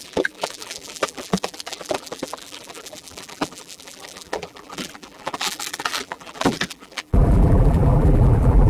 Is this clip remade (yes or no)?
yes